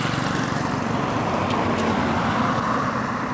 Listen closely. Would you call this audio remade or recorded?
recorded